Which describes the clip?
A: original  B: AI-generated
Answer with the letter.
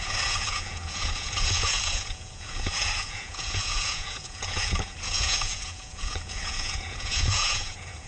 B